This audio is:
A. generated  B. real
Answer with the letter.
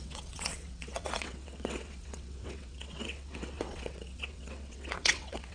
A